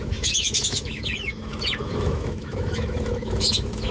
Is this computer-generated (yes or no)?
yes